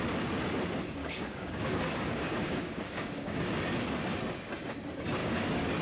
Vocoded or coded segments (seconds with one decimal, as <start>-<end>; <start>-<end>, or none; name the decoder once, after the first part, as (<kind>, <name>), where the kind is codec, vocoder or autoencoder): 1.0-3.5 (codec, DAC); 5.2-5.8